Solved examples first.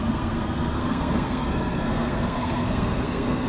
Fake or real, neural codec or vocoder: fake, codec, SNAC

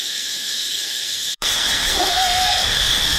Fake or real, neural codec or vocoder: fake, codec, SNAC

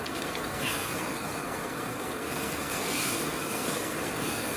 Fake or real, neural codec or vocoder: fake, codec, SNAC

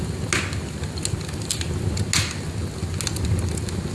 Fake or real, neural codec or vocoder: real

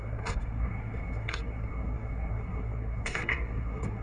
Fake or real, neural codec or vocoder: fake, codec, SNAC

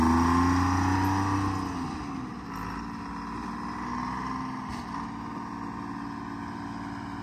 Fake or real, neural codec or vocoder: real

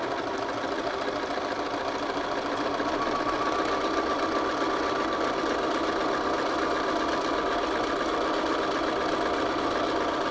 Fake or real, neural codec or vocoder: real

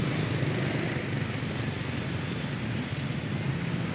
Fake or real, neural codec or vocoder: real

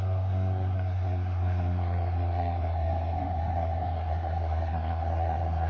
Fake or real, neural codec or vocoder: fake, codec, SNAC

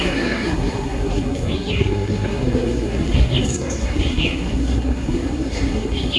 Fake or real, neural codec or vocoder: fake, codec, SNAC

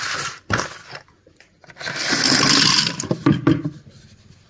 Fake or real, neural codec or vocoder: real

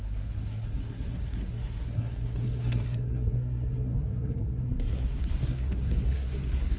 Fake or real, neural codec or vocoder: fake, codec, SNAC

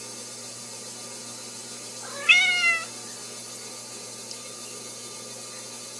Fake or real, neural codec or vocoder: real